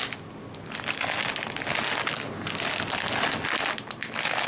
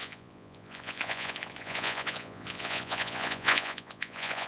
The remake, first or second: second